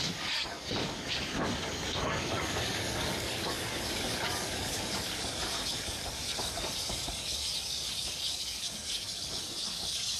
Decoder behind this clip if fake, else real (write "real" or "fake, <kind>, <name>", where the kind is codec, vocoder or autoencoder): fake, codec, DAC